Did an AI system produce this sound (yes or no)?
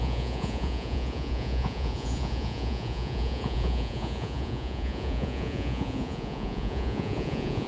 yes